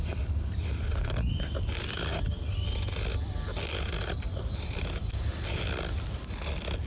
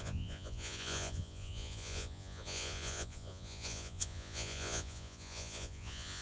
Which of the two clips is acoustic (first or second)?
first